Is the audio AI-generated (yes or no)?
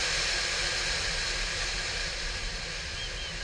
no